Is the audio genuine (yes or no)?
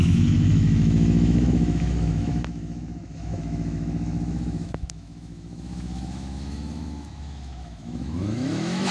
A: no